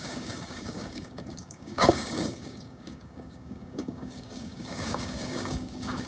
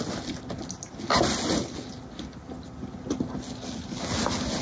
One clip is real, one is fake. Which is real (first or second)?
second